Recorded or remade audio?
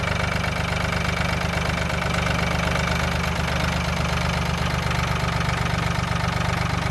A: recorded